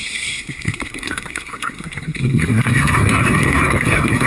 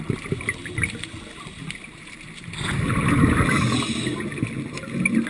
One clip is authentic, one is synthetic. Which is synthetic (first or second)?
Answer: first